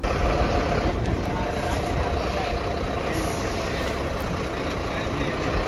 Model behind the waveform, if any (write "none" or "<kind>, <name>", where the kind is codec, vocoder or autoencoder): none